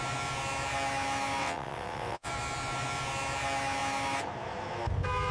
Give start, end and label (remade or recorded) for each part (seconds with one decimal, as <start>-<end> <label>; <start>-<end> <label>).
0.0-1.4 recorded; 1.4-2.3 remade; 2.3-5.3 recorded